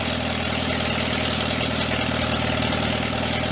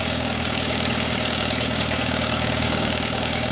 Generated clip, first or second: second